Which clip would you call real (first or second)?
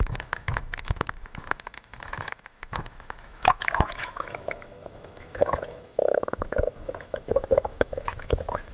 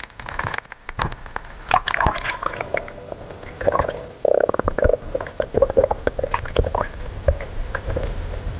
second